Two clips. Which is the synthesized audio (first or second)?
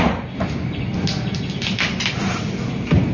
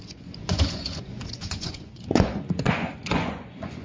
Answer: second